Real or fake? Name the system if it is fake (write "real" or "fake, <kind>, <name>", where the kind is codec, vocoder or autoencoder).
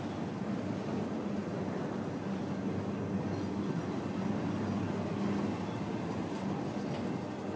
real